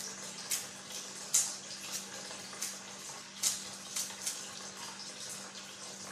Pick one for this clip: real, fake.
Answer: real